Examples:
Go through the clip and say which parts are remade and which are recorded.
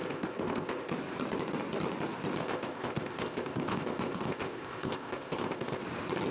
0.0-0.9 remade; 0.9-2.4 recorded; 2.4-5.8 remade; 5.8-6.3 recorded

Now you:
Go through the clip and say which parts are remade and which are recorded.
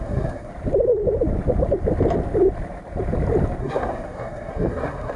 0.0-0.5 remade; 0.5-3.6 recorded; 3.6-5.2 remade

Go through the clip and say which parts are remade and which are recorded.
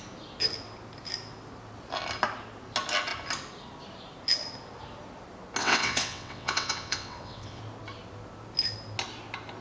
0.0-5.6 recorded; 5.6-7.6 remade; 7.6-9.6 recorded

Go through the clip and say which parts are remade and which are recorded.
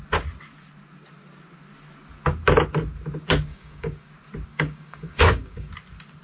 0.0-3.5 recorded; 3.5-4.1 remade; 4.1-4.5 recorded; 4.5-5.7 remade; 5.7-6.2 recorded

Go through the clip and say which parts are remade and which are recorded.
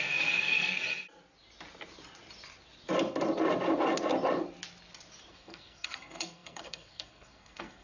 0.0-0.8 remade; 0.8-5.3 recorded; 5.3-7.8 remade